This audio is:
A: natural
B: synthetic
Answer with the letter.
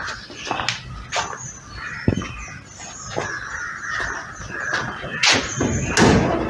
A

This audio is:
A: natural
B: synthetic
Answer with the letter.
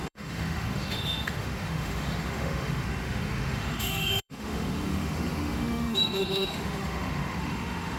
B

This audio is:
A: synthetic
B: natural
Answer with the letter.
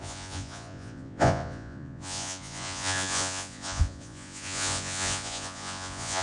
A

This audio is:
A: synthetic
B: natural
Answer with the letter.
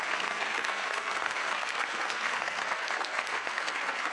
A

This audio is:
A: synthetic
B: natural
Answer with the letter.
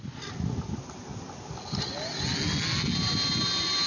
B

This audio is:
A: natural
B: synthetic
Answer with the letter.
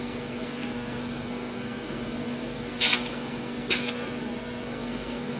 B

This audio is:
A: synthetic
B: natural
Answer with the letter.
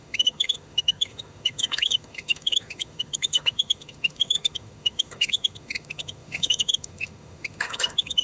A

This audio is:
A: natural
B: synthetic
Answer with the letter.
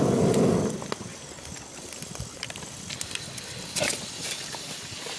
A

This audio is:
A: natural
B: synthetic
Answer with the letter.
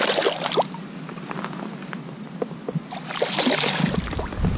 A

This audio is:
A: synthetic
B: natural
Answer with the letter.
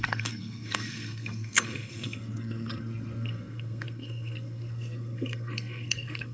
A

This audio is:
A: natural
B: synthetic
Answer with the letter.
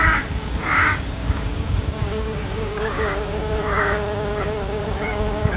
B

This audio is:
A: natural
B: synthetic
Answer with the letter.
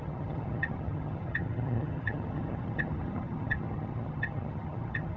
B